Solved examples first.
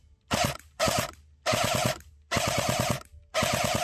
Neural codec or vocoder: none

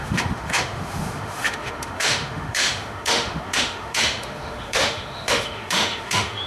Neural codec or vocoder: autoencoder, DAC-VAE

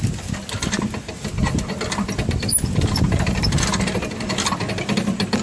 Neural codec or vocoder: none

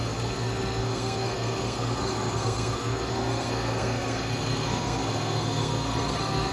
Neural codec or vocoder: codec, SNAC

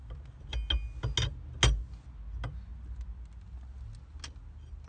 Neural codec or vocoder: none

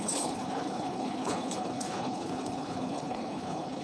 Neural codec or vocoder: codec, HILCodec